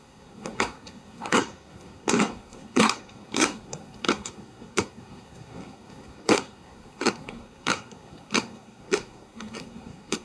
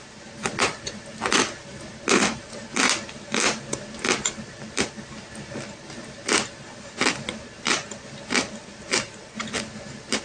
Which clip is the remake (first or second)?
first